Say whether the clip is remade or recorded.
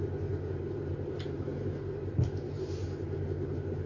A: recorded